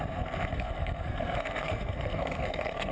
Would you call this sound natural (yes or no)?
no